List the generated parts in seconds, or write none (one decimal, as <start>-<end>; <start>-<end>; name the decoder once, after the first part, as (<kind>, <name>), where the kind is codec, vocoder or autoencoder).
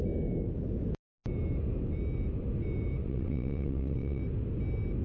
3.0-4.2 (vocoder, WaveNeXt)